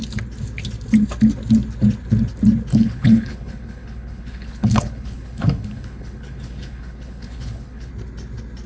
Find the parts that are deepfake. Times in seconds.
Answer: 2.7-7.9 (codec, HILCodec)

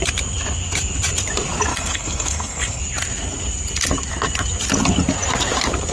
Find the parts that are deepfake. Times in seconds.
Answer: 1.7-2.8 (codec, SNAC)